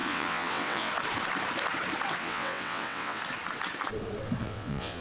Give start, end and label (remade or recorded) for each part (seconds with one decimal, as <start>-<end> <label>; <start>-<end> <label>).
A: 0.0-0.9 remade; 0.9-2.2 recorded; 2.2-3.2 remade; 3.2-4.4 recorded; 4.4-5.0 remade